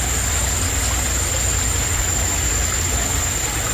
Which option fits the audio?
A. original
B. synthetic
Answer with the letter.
A